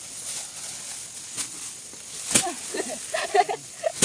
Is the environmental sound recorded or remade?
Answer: recorded